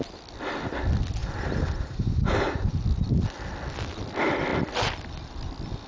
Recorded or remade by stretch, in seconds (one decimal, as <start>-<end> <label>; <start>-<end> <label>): 0.0-1.2 recorded; 1.2-2.7 remade; 2.7-5.9 recorded